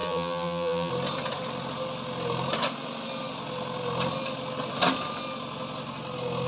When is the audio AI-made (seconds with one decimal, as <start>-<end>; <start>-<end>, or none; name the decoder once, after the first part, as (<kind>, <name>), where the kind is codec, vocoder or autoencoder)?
0.0-0.9 (vocoder, BigVGAN v2)